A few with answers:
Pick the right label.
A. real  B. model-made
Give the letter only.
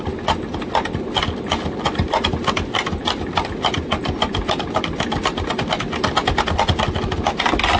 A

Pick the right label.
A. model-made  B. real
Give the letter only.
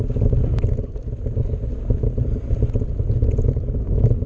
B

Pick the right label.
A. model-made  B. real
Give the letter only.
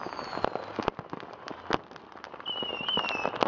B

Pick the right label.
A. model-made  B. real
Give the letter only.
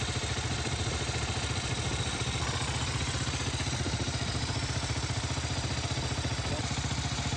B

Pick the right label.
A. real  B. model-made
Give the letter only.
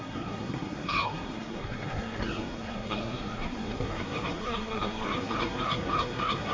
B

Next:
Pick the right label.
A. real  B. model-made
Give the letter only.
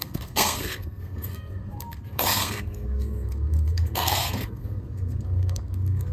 B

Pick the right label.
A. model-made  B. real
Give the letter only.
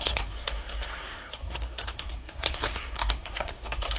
A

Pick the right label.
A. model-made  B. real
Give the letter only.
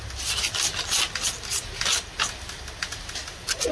B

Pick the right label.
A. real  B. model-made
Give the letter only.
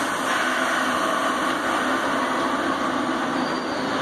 A